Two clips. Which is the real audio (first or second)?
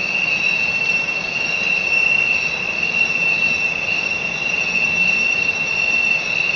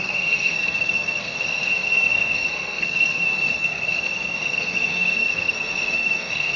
first